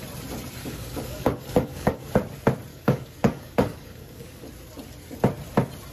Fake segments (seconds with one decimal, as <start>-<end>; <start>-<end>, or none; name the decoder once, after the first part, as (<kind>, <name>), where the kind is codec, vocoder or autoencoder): 0.6-2.1 (codec, DAC); 2.7-4.5